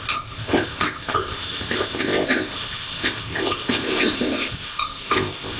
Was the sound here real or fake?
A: fake